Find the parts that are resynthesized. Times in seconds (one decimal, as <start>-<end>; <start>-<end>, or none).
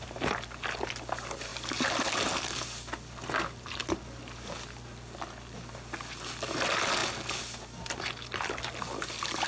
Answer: none